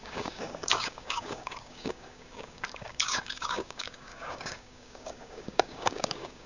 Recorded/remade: remade